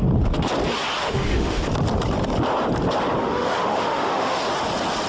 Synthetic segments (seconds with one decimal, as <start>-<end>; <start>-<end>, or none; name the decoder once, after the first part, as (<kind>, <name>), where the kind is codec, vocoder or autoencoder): 1.0-1.6 (autoencoder, DAC-VAE); 3.2-4.4